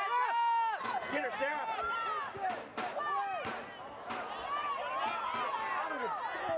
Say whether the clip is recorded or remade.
recorded